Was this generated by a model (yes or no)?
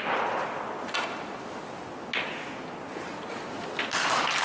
no